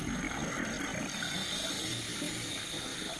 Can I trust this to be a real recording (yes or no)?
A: no